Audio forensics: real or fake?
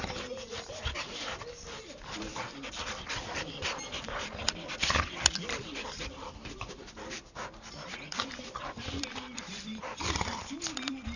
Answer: fake